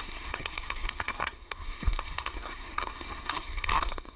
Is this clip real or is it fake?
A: fake